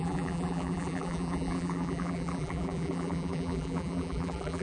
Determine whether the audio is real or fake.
fake